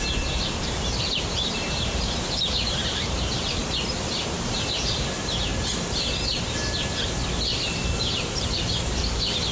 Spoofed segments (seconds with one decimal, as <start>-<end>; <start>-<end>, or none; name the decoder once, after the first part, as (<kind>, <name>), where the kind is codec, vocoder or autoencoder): 0.0-3.6 (vocoder, BigVGAN v2); 4.3-5.5; 7.5-9.5